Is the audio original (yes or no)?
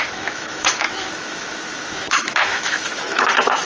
no